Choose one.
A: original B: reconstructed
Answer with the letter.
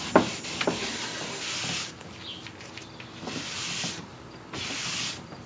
A